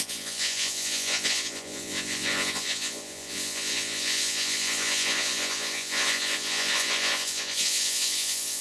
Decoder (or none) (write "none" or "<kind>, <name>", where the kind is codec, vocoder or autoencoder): vocoder, Vocos